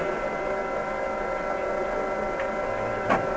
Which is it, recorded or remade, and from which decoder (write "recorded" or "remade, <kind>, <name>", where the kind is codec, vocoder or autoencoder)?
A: recorded